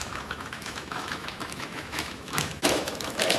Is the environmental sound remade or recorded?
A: remade